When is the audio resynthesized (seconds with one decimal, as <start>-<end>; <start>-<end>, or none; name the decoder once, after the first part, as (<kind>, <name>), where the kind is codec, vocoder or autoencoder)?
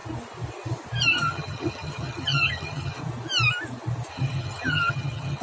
1.1-3.0 (vocoder, HiFi-GAN); 4.1-5.4